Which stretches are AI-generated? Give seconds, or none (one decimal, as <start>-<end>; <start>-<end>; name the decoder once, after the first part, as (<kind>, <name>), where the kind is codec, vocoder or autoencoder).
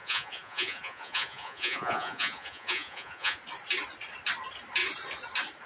0.0-3.4 (vocoder, Vocos)